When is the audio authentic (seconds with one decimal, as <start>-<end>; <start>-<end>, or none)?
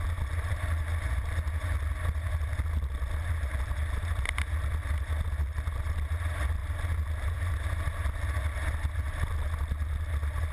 0.0-10.5